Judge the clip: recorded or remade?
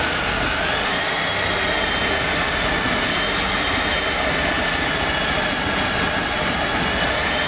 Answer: recorded